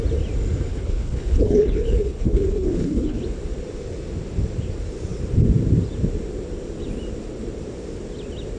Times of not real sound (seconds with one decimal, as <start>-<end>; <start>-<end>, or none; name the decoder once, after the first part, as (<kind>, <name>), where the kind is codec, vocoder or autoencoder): 0.7-3.2 (codec, HILCodec)